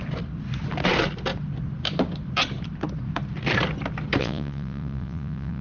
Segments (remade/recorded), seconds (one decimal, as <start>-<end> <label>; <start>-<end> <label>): 0.0-4.2 recorded; 4.2-5.6 remade